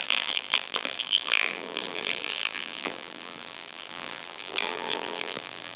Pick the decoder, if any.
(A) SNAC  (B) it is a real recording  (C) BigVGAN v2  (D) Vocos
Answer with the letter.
C